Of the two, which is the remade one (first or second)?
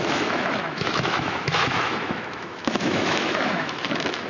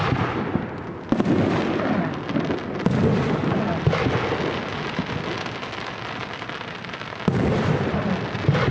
first